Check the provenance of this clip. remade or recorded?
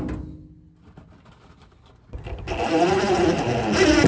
recorded